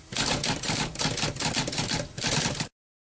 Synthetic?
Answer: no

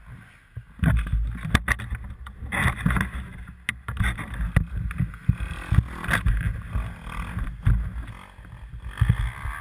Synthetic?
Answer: no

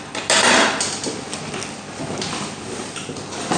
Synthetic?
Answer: no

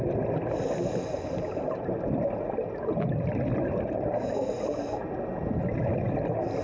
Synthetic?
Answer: no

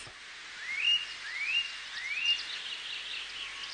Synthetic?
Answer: no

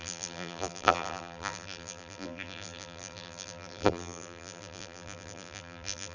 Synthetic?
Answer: yes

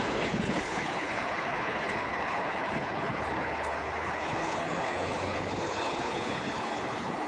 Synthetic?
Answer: yes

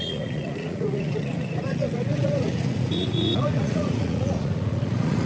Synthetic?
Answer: yes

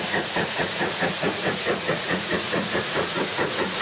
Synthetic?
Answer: yes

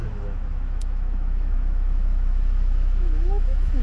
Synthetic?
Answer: yes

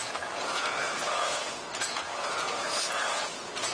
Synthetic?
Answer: yes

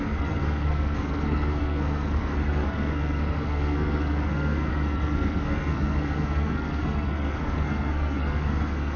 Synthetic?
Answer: yes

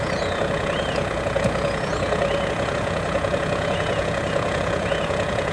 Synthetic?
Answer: yes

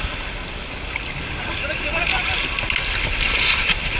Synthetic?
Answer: no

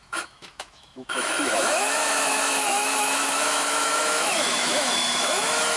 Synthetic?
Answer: yes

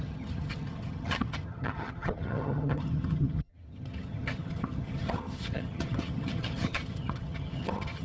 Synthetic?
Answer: yes